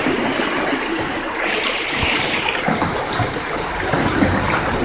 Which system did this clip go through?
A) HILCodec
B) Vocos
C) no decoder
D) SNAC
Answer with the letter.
C